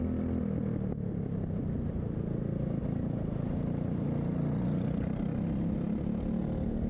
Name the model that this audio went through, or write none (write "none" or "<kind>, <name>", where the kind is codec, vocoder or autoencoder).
none